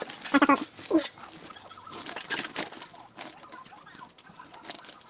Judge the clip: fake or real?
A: real